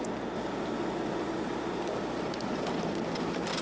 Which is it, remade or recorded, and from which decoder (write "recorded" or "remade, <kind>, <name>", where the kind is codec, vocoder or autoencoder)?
recorded